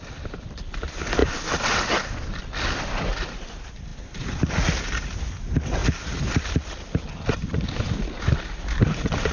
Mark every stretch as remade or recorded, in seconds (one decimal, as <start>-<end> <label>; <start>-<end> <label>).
0.0-9.3 recorded